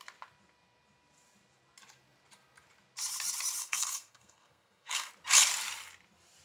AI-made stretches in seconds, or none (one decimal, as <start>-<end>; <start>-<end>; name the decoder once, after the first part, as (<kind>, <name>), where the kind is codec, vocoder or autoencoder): 3.6-5.1 (codec, SNAC)